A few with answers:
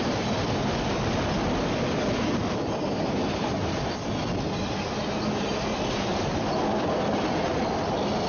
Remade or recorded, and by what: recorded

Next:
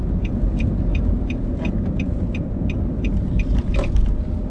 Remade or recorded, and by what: remade, vocoder, BigVGAN v2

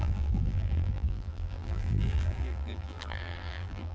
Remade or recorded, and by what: remade, vocoder, BigVGAN v2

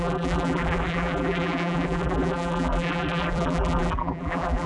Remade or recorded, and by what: remade, vocoder, BigVGAN v2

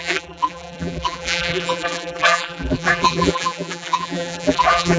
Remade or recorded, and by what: remade, vocoder, BigVGAN v2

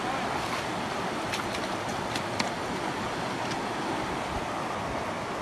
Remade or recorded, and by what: recorded